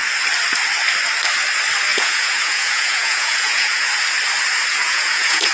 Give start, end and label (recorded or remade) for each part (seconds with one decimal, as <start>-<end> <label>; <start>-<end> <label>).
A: 0.0-1.9 recorded; 1.9-3.9 remade; 3.9-4.7 recorded; 4.7-5.5 remade